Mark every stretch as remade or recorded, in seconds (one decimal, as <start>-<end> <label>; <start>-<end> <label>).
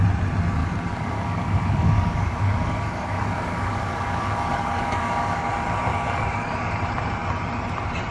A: 0.0-0.6 recorded; 0.6-5.5 remade; 5.5-5.9 recorded; 5.9-6.8 remade; 6.8-8.1 recorded